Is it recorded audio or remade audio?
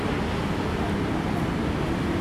recorded